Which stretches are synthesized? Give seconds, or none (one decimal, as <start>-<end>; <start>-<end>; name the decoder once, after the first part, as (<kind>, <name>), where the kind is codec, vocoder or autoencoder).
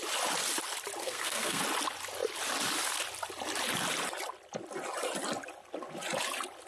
1.0-1.6 (codec, SNAC)